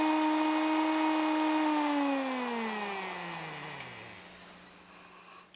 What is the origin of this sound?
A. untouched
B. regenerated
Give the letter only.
A